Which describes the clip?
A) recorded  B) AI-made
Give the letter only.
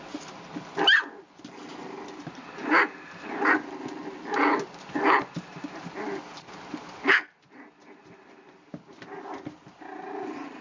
A